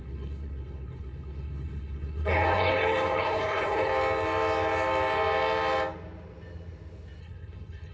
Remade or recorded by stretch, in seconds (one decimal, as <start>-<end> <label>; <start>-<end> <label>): 0.0-3.9 remade; 3.9-7.2 recorded; 7.2-7.9 remade